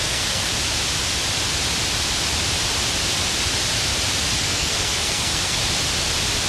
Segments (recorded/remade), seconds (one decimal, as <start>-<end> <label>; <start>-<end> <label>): 0.0-0.5 remade; 0.5-4.4 recorded; 4.4-5.6 remade; 5.6-6.5 recorded